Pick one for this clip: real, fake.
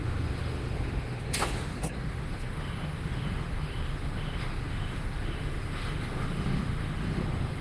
fake